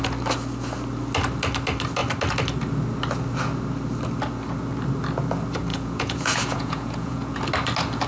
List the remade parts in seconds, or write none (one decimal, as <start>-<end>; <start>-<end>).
5.7-7.4